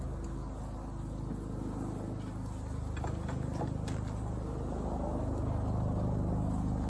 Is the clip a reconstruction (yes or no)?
no